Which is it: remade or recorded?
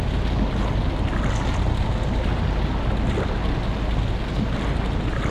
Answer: recorded